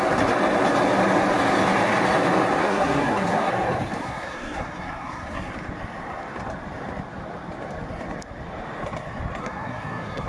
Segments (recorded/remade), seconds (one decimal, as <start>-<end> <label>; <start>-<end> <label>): 0.0-2.6 recorded; 2.6-3.5 remade; 3.5-4.0 recorded; 4.0-5.5 remade; 5.5-9.4 recorded; 9.4-10.3 remade